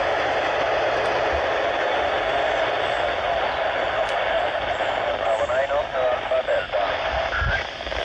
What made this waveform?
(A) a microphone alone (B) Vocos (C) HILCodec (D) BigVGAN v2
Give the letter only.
A